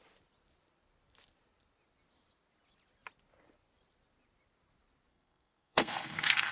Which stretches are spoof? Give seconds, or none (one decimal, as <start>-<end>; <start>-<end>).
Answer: 5.1-6.5